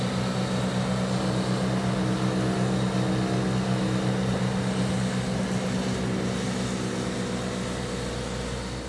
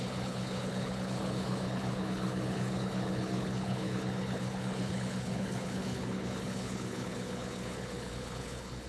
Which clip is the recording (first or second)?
first